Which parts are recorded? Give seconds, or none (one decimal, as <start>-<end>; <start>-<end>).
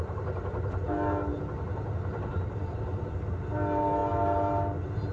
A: 0.0-5.1